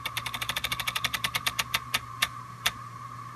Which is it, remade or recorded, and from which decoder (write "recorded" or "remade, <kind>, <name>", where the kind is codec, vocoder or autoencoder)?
remade, vocoder, BigVGAN v2